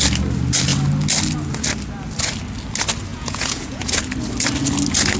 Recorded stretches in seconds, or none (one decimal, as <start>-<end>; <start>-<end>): 0.0-3.1; 4.0-5.2